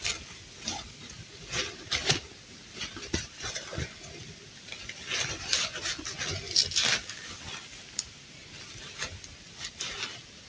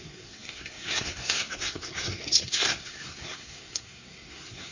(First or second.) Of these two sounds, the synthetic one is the second